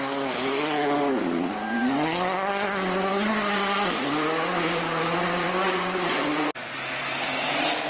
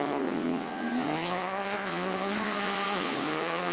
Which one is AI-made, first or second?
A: second